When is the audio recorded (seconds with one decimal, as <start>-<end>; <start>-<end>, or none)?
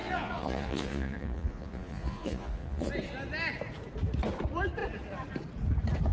2.9-6.1